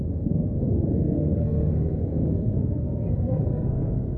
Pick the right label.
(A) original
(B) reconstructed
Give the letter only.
B